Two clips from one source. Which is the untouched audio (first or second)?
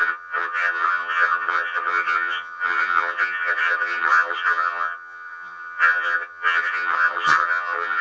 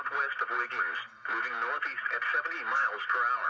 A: second